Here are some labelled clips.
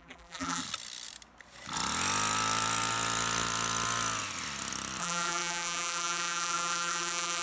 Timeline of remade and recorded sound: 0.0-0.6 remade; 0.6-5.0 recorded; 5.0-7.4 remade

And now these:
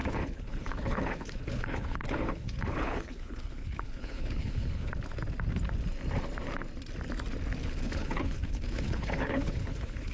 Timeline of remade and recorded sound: 0.0-4.9 remade; 4.9-7.6 recorded; 7.6-10.1 remade

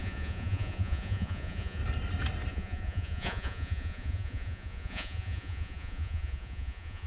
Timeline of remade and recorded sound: 0.0-1.8 remade; 1.8-2.5 recorded; 2.5-7.1 remade

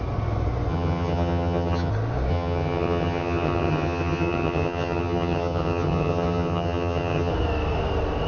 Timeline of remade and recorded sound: 0.0-0.7 recorded; 0.7-1.9 remade; 1.9-2.3 recorded; 2.3-7.3 remade; 7.3-8.3 recorded

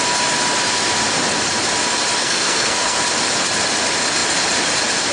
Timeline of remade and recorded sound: 0.0-2.2 recorded; 2.2-3.0 remade; 3.0-5.1 recorded

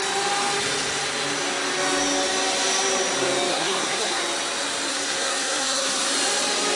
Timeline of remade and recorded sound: 0.0-3.5 recorded; 3.5-4.2 remade; 4.2-4.9 recorded; 4.9-6.1 remade; 6.1-6.8 recorded

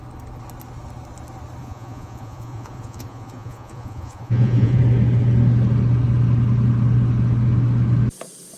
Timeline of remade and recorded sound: 0.0-1.6 recorded; 1.6-4.8 remade; 4.8-8.6 recorded